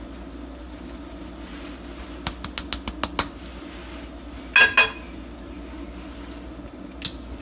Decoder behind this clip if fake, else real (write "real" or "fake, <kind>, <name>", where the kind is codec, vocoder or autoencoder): real